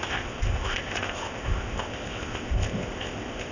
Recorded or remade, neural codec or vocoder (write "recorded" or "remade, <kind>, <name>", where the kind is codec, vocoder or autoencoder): remade, codec, ZipCodec